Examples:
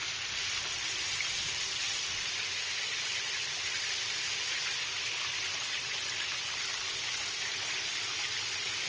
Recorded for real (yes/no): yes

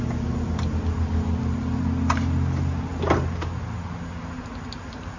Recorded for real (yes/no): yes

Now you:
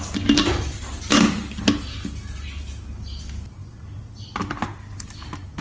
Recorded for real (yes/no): yes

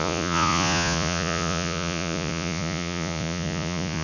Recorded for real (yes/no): no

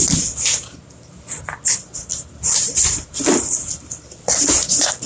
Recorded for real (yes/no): yes